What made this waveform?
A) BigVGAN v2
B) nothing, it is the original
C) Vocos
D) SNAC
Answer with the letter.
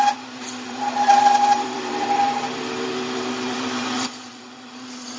A